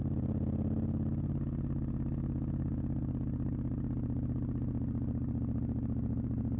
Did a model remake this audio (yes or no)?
no